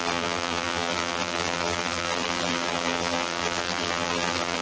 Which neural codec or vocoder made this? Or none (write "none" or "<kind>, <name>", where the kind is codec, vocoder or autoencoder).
vocoder, BigVGAN v2